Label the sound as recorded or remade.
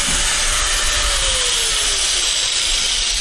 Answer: recorded